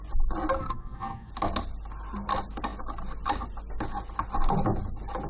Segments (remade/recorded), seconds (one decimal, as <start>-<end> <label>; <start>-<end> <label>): 0.0-0.6 recorded; 0.6-1.3 remade; 1.3-5.3 recorded